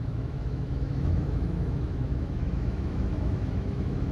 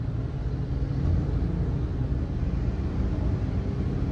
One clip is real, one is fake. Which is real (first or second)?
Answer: second